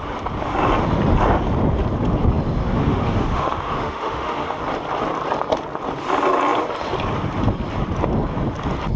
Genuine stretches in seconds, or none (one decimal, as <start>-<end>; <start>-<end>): 0.0-2.6; 4.6-9.0